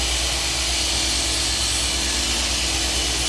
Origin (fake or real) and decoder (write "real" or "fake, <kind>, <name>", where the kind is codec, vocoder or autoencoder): real